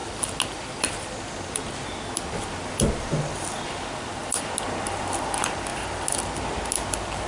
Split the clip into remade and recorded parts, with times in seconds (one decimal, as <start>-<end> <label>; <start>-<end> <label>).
0.0-7.3 recorded